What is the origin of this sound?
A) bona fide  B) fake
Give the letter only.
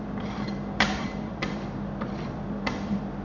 B